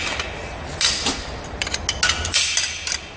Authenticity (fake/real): real